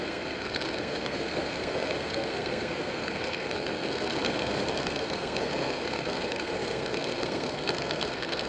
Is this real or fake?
fake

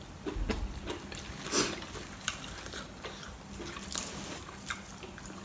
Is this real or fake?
real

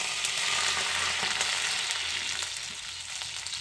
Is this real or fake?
real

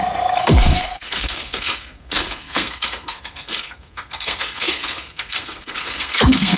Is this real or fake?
fake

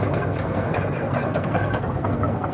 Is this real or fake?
fake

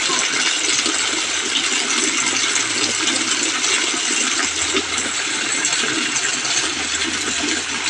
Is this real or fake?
real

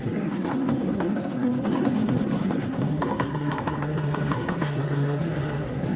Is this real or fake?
fake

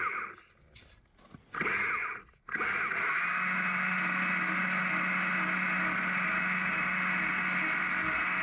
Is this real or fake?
real